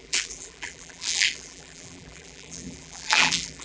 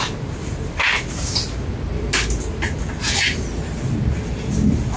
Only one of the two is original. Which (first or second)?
second